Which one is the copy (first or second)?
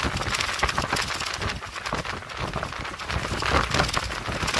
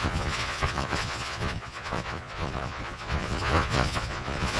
second